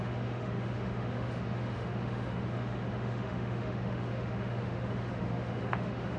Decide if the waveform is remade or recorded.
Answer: remade